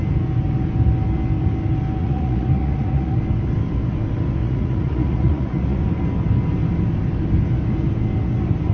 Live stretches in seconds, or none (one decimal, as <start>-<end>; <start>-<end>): 0.0-2.0; 3.2-4.4; 5.8-8.7